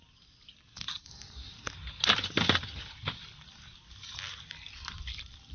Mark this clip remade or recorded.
recorded